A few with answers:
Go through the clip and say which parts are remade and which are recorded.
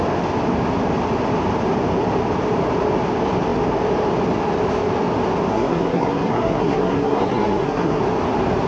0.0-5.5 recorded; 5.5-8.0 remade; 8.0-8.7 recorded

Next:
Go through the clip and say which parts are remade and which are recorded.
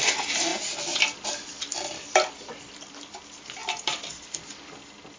0.0-5.2 recorded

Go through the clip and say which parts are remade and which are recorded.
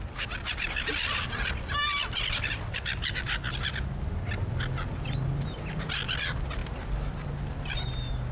0.0-8.3 recorded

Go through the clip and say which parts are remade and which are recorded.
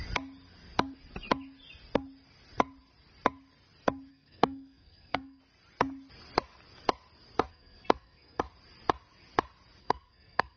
0.0-4.1 recorded; 4.1-5.4 remade; 5.4-7.5 recorded; 7.5-8.4 remade; 8.4-9.8 recorded; 9.8-10.6 remade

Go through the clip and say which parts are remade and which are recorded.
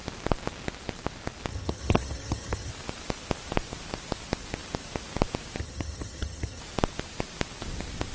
0.0-1.5 recorded; 1.5-2.7 remade; 2.7-5.6 recorded; 5.6-6.6 remade; 6.6-8.1 recorded